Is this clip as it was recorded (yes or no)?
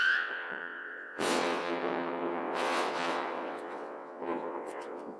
no